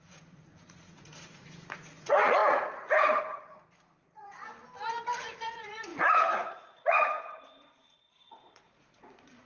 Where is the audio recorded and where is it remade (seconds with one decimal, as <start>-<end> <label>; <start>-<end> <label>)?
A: 0.0-4.4 remade; 4.4-5.2 recorded; 5.2-9.5 remade